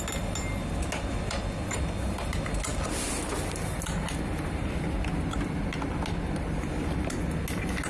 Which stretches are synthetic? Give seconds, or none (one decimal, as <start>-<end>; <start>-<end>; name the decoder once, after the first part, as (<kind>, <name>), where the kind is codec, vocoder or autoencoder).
none